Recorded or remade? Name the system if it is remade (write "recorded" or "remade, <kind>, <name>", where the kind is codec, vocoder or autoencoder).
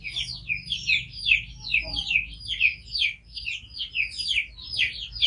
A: recorded